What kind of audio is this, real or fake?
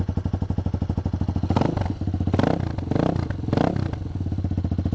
real